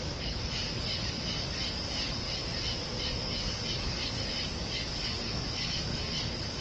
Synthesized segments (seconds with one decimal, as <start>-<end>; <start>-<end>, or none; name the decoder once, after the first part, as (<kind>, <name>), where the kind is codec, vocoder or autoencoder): 0.0-2.4 (codec, DAC); 3.1-6.6